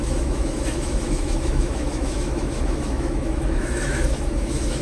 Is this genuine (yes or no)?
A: no